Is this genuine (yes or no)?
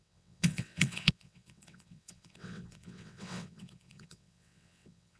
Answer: no